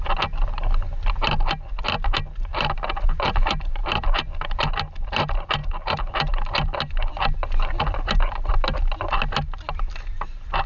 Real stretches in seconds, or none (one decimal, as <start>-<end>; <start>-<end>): 0.0-10.7